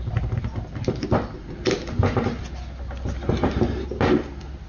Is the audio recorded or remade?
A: recorded